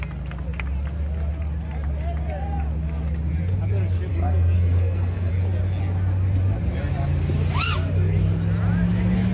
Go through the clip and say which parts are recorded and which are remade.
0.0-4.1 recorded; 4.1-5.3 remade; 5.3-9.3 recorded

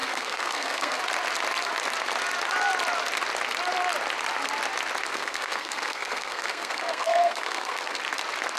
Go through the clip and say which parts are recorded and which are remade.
0.0-1.0 remade; 1.0-5.1 recorded; 5.1-8.0 remade; 8.0-8.6 recorded

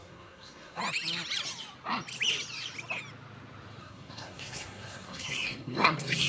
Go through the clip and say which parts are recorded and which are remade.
0.0-0.8 remade; 0.8-3.8 recorded; 3.8-6.3 remade

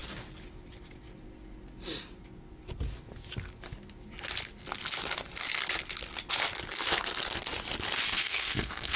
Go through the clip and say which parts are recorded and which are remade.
0.0-8.1 recorded; 8.1-9.0 remade

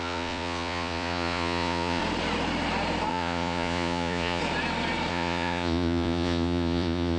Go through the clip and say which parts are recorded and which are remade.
0.0-2.0 remade; 2.0-3.1 recorded; 3.1-4.4 remade; 4.4-5.1 recorded; 5.1-7.2 remade

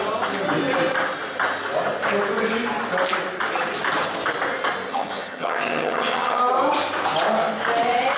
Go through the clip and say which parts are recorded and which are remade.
0.0-4.9 recorded; 4.9-6.4 remade; 6.4-8.2 recorded